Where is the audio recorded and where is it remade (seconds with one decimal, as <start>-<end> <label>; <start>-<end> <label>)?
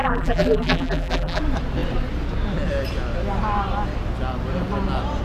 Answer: 0.0-1.4 remade; 1.4-5.2 recorded